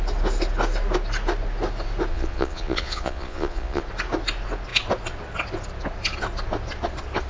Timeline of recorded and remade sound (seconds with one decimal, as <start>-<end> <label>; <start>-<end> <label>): 0.0-2.1 recorded; 2.1-3.8 remade; 3.8-7.3 recorded